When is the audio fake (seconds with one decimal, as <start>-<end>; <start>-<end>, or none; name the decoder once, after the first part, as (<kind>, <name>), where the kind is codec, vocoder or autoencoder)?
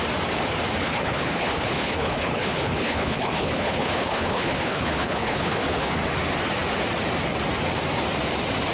0.8-6.0 (codec, HILCodec)